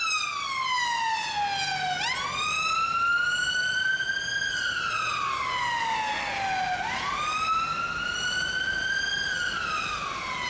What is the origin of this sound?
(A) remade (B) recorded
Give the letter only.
B